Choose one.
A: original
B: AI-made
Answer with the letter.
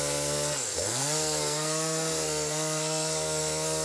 B